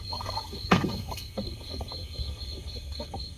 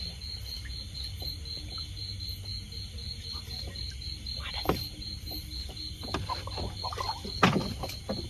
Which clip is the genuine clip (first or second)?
second